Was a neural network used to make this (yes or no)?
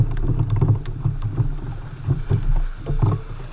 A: no